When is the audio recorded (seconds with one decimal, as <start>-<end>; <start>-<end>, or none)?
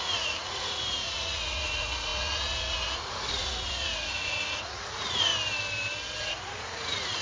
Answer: 5.3-6.2